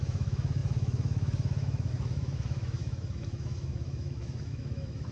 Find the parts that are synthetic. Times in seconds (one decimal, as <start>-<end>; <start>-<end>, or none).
0.0-5.1